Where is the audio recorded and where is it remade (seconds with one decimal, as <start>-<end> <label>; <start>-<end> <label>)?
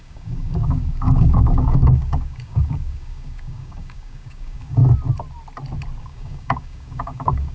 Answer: 0.0-4.8 remade; 4.8-6.0 recorded; 6.0-7.5 remade